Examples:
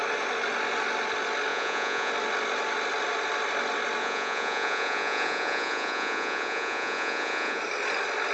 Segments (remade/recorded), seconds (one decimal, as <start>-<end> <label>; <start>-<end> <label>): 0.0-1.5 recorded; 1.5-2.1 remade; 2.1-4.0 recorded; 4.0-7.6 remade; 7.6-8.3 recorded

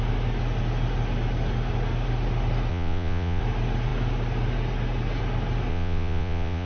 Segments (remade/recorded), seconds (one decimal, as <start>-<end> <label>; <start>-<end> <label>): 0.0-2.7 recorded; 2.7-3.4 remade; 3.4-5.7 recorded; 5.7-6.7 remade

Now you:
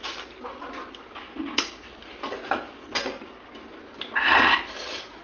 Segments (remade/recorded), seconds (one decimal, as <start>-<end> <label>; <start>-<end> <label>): 0.0-5.2 recorded

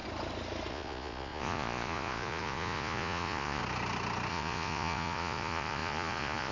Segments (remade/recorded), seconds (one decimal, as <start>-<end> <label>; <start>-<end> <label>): 0.0-0.7 recorded; 0.7-3.6 remade; 3.6-4.3 recorded; 4.3-6.5 remade

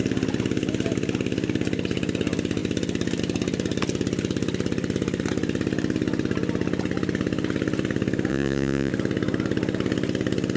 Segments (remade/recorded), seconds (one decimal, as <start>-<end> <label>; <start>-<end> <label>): 0.0-8.3 recorded; 8.3-8.9 remade; 8.9-10.6 recorded

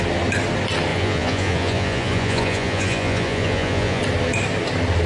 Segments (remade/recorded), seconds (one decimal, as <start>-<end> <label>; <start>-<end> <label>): 0.0-0.9 recorded; 0.9-4.0 remade; 4.0-5.1 recorded